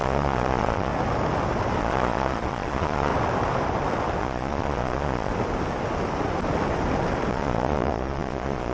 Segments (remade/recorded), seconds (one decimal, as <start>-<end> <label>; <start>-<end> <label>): 0.0-0.9 remade; 0.9-1.8 recorded; 1.8-3.1 remade; 3.1-4.2 recorded; 4.2-5.3 remade; 5.3-7.3 recorded; 7.3-8.7 remade